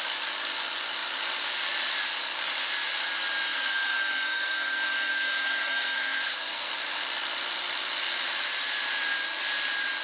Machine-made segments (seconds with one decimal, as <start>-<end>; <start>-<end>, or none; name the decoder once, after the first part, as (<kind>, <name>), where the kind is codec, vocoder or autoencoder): 3.5-6.7 (codec, SNAC)